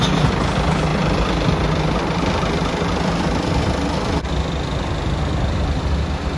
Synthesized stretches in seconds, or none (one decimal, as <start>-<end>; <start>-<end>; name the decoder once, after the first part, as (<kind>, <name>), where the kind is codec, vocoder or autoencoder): 0.9-4.7 (vocoder, BigVGAN v2)